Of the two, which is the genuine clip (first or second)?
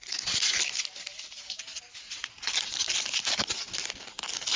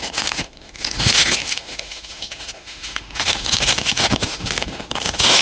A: first